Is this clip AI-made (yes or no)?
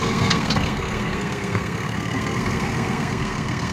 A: yes